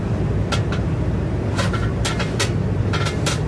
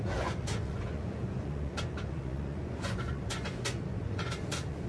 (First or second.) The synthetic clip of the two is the second